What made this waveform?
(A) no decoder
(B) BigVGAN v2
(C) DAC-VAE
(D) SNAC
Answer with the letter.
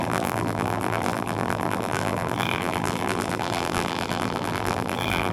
B